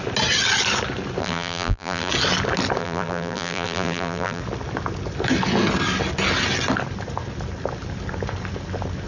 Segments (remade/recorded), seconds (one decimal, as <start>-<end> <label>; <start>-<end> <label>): 0.0-1.2 recorded; 1.2-2.1 remade; 2.1-2.8 recorded; 2.8-4.4 remade; 4.4-9.1 recorded